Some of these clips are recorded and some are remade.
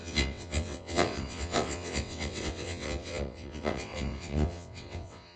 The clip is remade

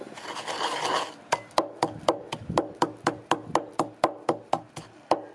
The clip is recorded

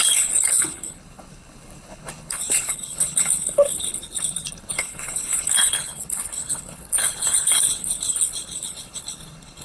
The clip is remade